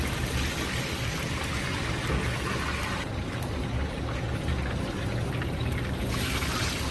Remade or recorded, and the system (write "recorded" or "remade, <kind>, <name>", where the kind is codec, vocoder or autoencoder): recorded